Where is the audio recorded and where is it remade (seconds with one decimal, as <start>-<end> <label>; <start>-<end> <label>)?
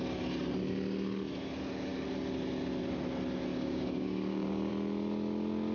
0.0-3.5 recorded; 3.5-4.7 remade; 4.7-5.7 recorded